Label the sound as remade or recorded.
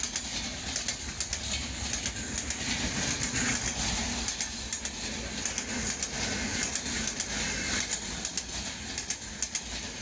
recorded